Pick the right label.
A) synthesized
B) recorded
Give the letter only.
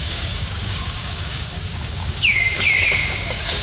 A